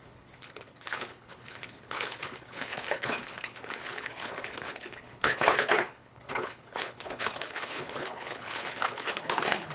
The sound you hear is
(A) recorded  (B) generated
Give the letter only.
B